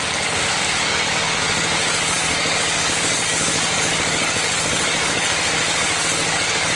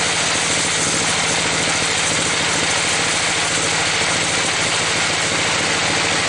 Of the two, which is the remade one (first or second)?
first